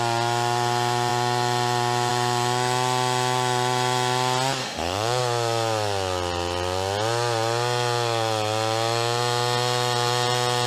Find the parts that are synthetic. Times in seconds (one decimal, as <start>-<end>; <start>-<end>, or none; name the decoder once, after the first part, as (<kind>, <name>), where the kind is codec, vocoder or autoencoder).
4.6-5.2 (autoencoder, DAC-VAE)